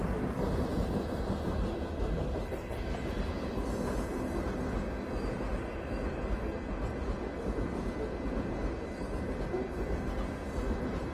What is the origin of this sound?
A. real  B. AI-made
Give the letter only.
A